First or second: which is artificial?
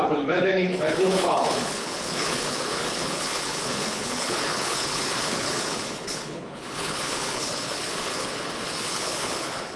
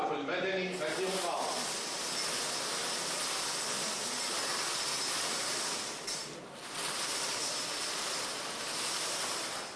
first